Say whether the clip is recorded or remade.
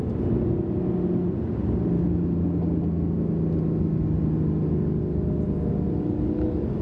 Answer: recorded